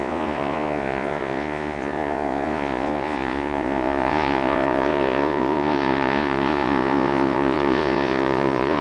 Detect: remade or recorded remade